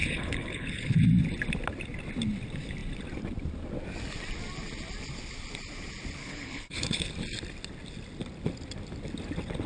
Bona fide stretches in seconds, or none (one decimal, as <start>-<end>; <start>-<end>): 1.0-6.2; 7.1-9.7

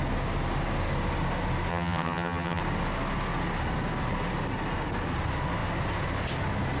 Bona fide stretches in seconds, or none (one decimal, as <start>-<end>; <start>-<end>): 0.0-1.7; 2.6-6.8

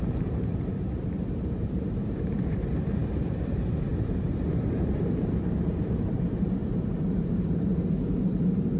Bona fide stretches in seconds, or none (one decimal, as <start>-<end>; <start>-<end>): 7.7-8.2